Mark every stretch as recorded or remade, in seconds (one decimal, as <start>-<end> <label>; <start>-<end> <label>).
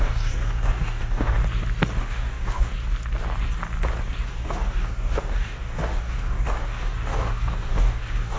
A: 0.0-1.4 remade; 1.4-2.0 recorded; 2.0-2.7 remade; 2.7-4.3 recorded; 4.3-8.4 remade